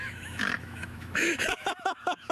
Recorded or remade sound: remade